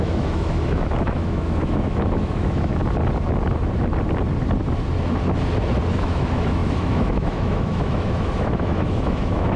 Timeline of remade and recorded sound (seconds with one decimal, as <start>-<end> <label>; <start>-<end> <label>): 0.0-2.8 remade; 2.8-5.9 recorded; 5.9-9.6 remade